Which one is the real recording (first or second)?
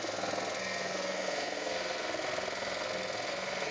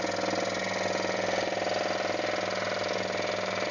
second